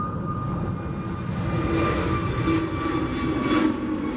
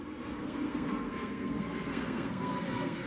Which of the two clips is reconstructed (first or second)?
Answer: second